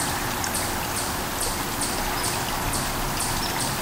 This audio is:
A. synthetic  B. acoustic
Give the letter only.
B